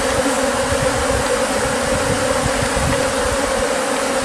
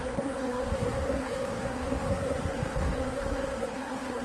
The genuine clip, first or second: first